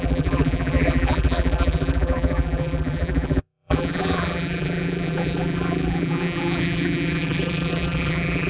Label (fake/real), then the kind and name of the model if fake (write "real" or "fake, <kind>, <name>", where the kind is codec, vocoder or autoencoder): fake, vocoder, BigVGAN v2